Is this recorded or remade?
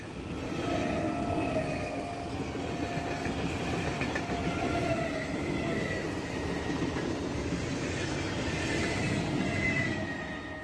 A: recorded